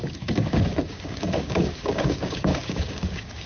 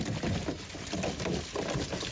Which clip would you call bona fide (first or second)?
second